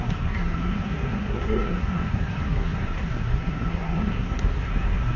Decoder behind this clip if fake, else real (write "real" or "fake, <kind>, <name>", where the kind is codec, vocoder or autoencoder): fake, codec, SNAC